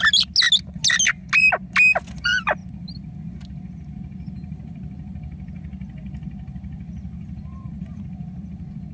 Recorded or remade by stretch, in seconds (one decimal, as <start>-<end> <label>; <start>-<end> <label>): 0.0-8.9 recorded